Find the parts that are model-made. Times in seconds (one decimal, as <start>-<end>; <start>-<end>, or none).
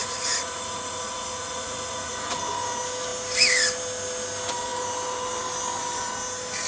0.0-2.4